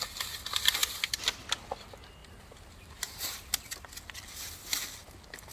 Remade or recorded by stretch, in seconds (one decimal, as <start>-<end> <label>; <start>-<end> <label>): 0.0-2.2 recorded; 2.2-3.5 remade; 3.5-5.5 recorded

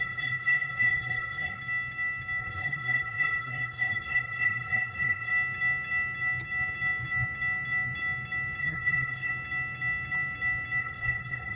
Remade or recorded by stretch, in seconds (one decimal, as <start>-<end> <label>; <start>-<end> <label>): 0.0-1.6 remade; 1.6-2.4 recorded; 2.4-5.3 remade; 5.3-8.6 recorded; 8.6-9.3 remade; 9.3-10.8 recorded; 10.8-11.6 remade

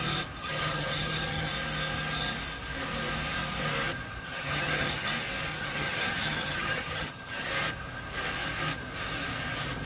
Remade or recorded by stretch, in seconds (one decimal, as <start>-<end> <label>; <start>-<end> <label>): 0.0-0.4 recorded; 0.4-1.5 remade; 1.5-4.2 recorded; 4.2-5.1 remade; 5.1-5.5 recorded; 5.5-7.5 remade; 7.5-9.9 recorded

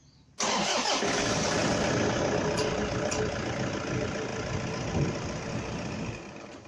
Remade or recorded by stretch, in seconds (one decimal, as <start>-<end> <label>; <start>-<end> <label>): 0.0-6.7 recorded

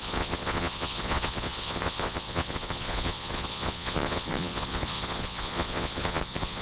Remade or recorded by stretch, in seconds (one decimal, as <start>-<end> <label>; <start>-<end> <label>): 0.0-6.6 remade

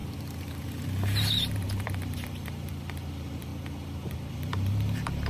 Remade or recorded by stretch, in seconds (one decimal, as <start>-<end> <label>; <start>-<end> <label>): 0.0-3.5 remade; 3.5-4.3 recorded; 4.3-5.3 remade